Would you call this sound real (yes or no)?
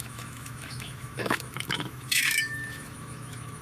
no